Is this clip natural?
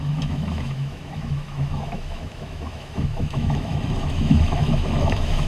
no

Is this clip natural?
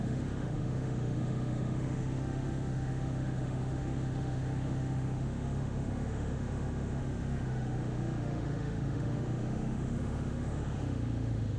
no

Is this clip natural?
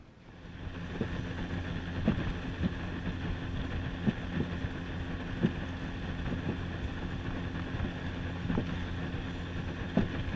yes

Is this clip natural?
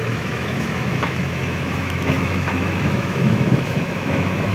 no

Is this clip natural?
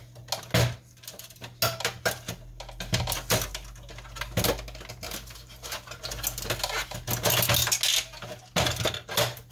yes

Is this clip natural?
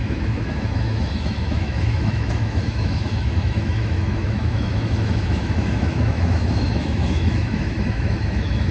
no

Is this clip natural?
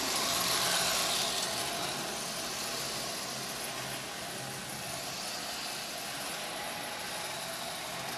yes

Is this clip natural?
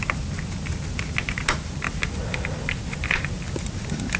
yes